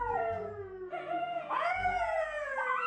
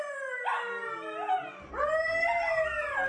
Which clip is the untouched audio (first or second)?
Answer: second